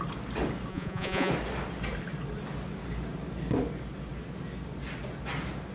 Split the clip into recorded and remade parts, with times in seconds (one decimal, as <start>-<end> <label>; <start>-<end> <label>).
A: 0.0-0.7 recorded; 0.7-1.3 remade; 1.3-5.7 recorded